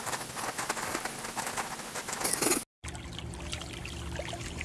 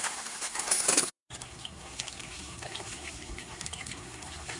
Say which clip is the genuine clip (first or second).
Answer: first